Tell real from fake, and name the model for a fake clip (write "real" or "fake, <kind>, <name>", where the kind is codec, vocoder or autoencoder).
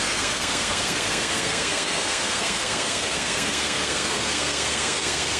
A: fake, codec, SNAC